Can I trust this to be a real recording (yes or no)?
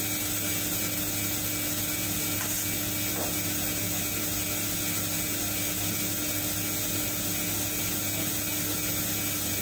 yes